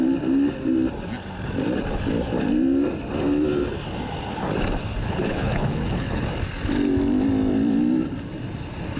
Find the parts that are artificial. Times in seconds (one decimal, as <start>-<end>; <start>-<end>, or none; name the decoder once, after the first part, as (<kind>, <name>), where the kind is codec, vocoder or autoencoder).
5.0-6.2 (codec, HILCodec)

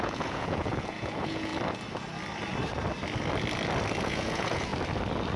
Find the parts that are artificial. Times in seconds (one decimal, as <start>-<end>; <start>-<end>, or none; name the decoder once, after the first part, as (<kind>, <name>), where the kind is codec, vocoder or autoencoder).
0.0-1.5 (vocoder, Vocos); 4.0-4.7